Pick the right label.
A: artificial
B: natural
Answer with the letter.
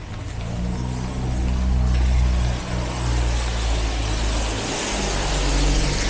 B